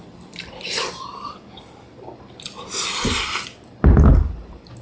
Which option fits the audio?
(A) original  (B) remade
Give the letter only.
A